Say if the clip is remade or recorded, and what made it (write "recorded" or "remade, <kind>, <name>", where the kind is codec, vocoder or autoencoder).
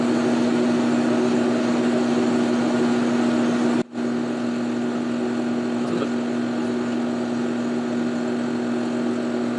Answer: recorded